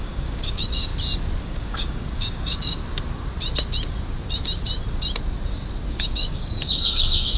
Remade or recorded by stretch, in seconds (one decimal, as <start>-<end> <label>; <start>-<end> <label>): 0.0-0.9 remade; 0.9-1.4 recorded; 1.4-2.8 remade; 2.8-5.9 recorded; 5.9-7.4 remade